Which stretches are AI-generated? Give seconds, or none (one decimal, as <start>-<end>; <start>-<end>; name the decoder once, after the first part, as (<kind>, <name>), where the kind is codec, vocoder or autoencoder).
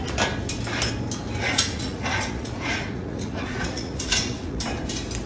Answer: 1.4-4.6 (vocoder, Vocos)